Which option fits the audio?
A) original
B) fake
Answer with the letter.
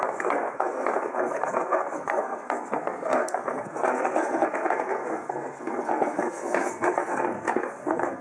B